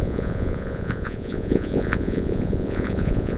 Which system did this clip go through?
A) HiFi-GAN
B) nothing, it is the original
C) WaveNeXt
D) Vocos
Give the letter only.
D